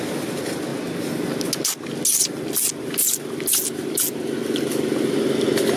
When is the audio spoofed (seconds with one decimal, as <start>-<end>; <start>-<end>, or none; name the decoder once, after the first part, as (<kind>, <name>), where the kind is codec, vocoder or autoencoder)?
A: none